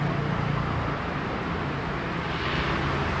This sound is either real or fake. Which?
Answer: real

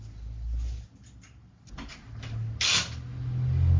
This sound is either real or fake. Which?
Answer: real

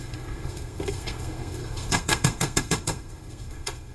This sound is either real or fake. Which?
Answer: fake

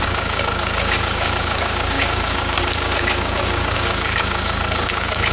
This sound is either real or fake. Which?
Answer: fake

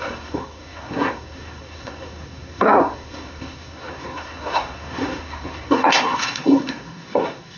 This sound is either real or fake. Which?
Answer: fake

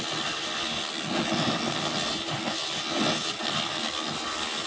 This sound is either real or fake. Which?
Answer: real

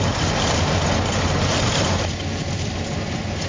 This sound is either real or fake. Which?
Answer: real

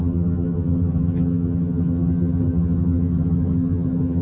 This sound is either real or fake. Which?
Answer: fake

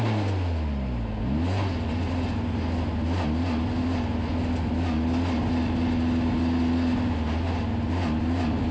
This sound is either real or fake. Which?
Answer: real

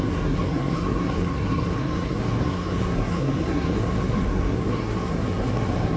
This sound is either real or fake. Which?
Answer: fake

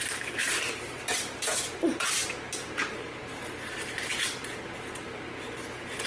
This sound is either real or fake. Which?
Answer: fake